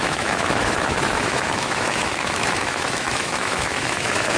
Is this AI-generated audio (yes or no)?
yes